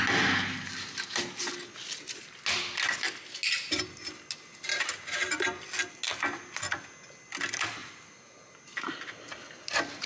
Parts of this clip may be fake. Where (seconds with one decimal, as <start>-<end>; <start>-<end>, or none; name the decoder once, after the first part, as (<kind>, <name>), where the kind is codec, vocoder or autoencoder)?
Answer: 7.8-9.1 (vocoder, BigVGAN v2)